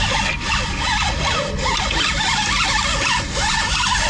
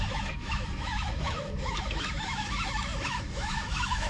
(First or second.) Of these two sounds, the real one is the first